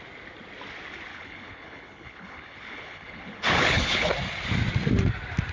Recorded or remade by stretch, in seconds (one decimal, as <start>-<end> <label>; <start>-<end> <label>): 0.0-1.1 recorded; 1.1-4.1 remade; 4.1-5.5 recorded

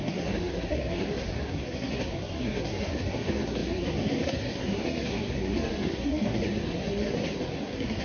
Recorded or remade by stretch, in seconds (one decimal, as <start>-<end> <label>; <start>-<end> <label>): 0.0-8.0 remade

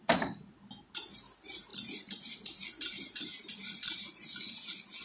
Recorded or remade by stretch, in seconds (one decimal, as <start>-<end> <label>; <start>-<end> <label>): 0.0-5.0 recorded

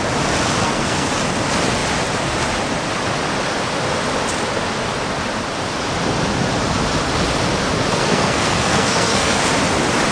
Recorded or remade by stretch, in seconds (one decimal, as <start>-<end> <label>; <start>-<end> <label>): 0.0-0.6 recorded; 0.6-1.1 remade; 1.1-7.9 recorded; 7.9-9.4 remade; 9.4-10.1 recorded

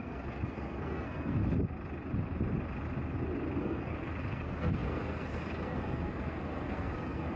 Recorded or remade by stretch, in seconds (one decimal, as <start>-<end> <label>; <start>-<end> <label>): 0.0-1.4 remade; 1.4-3.6 recorded; 3.6-7.4 remade

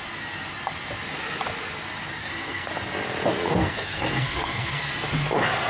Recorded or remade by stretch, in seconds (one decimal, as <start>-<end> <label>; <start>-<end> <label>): 0.0-2.2 recorded; 2.2-2.7 remade; 2.7-3.6 recorded; 3.6-4.9 remade; 4.9-5.7 recorded

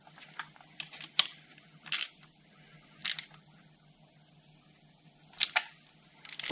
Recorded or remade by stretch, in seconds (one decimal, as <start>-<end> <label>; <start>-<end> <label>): 0.0-6.5 recorded

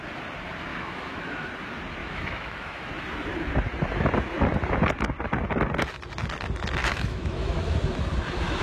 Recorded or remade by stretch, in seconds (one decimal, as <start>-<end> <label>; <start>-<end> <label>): 0.0-0.7 recorded; 0.7-1.5 remade; 1.5-2.0 recorded; 2.0-2.9 remade; 2.9-6.8 recorded; 6.8-7.6 remade; 7.6-8.6 recorded